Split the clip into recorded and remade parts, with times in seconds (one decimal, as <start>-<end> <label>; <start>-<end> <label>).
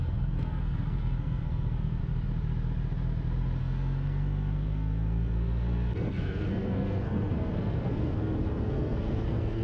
0.0-2.0 remade; 2.0-3.6 recorded; 3.6-9.6 remade